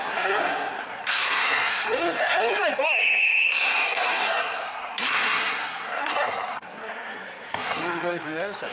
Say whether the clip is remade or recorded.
remade